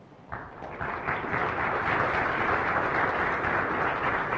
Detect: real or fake real